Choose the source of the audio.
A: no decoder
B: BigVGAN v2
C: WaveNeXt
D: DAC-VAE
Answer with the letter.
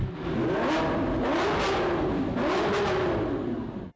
A